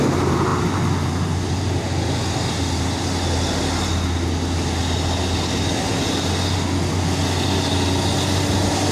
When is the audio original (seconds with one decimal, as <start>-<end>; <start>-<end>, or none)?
0.0-8.9